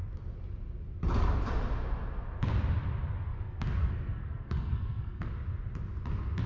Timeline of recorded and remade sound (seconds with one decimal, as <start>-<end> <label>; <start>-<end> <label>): 0.0-3.3 recorded; 3.3-5.3 remade; 5.3-6.5 recorded